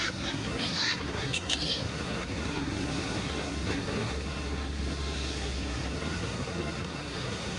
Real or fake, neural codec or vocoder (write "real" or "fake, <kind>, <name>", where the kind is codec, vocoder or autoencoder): fake, codec, SNAC